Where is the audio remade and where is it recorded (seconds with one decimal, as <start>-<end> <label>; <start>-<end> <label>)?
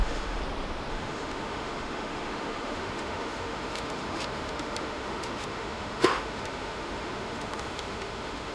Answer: 0.0-0.4 remade; 0.4-0.9 recorded; 0.9-8.5 remade